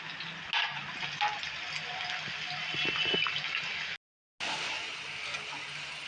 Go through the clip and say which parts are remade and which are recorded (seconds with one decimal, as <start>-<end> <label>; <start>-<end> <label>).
0.0-6.1 recorded